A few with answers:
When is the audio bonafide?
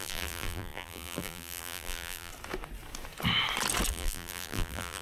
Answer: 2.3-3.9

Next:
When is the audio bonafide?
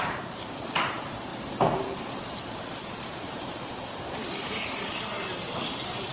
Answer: 1.3-2.8; 4.9-6.1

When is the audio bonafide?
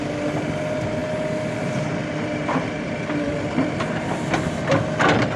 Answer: 0.0-2.0